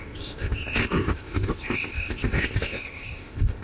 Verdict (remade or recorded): remade